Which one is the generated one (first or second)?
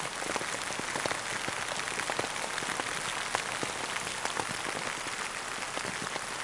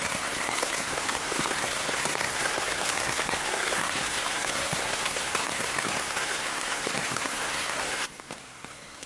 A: second